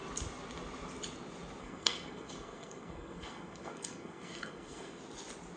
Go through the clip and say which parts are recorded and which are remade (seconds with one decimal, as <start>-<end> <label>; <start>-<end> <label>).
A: 0.0-1.6 recorded; 1.6-5.0 remade; 5.0-5.6 recorded